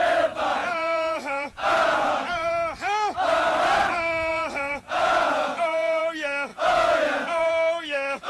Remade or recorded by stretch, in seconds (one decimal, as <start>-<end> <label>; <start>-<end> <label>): 0.0-0.6 recorded; 0.6-2.5 remade; 2.5-4.3 recorded; 4.3-6.0 remade; 6.0-6.5 recorded; 6.5-7.5 remade; 7.5-8.3 recorded